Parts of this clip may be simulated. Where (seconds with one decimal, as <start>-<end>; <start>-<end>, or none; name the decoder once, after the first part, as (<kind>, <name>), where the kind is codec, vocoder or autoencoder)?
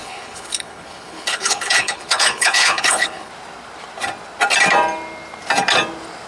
0.0-3.3 (codec, HILCodec)